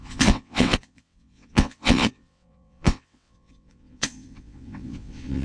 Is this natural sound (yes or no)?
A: no